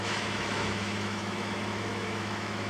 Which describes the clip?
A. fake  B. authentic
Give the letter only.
A